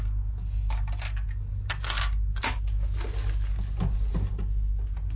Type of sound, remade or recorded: recorded